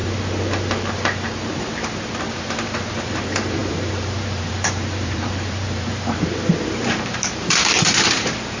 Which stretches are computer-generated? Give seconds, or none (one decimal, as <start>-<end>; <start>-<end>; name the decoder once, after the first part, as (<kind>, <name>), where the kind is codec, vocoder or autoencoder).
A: 2.3-8.6 (vocoder, BigVGAN v2)

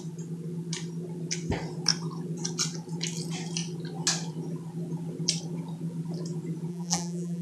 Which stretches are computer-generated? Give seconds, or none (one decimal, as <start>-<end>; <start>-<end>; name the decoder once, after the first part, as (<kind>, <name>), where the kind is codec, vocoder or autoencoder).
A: 6.7-7.4 (vocoder, BigVGAN v2)

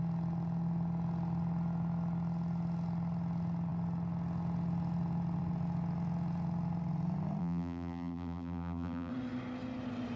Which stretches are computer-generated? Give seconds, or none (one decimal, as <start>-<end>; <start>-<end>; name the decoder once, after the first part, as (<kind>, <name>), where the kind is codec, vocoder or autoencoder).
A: 7.4-9.1 (vocoder, BigVGAN v2)

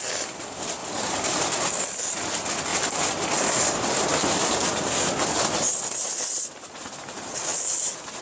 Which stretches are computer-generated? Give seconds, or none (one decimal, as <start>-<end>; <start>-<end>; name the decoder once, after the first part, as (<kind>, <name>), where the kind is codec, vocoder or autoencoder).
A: 0.8-2.0 (vocoder, BigVGAN v2)